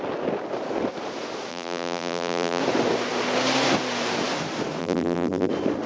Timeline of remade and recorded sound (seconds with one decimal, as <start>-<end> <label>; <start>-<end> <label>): 0.0-1.5 recorded; 1.5-2.6 remade; 2.6-4.8 recorded; 4.8-5.5 remade; 5.5-5.9 recorded